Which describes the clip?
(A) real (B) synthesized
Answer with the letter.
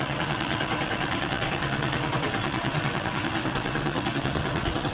B